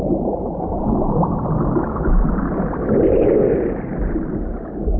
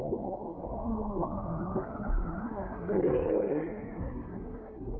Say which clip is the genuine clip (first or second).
first